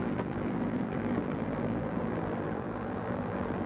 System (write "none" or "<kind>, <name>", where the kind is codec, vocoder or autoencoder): vocoder, BigVGAN v2